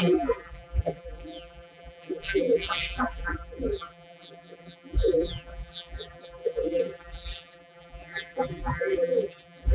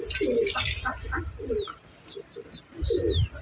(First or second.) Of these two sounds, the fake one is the first